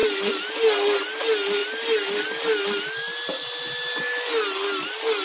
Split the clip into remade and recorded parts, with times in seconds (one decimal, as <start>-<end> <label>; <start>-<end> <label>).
0.0-5.2 recorded